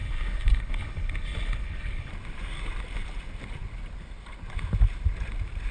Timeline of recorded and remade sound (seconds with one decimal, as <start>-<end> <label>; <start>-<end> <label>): 0.0-2.1 remade; 2.1-5.7 recorded